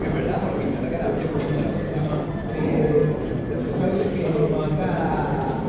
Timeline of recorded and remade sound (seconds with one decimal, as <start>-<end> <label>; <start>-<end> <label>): 0.0-5.7 remade